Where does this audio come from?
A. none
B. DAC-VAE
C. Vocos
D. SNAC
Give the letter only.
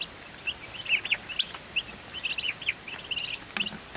A